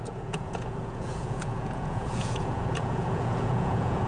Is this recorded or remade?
remade